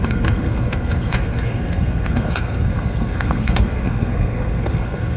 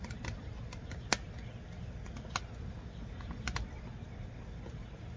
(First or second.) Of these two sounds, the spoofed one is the first